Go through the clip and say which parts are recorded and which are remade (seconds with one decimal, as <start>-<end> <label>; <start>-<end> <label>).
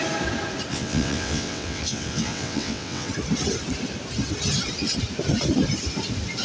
0.0-0.7 recorded; 0.7-3.1 remade; 3.1-6.4 recorded